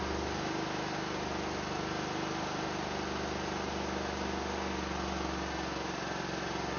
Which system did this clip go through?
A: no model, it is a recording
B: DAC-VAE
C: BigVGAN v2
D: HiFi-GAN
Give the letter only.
A